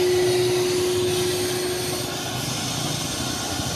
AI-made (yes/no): no